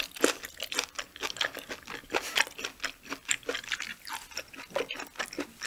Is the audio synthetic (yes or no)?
no